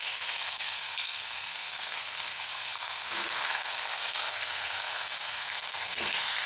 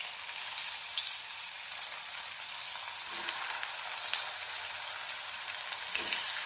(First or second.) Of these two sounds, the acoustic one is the second